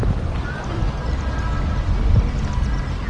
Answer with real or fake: real